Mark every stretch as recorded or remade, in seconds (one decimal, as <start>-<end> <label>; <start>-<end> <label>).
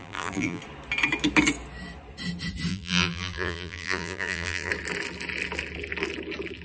0.0-0.6 remade; 0.6-2.7 recorded; 2.7-4.7 remade; 4.7-6.6 recorded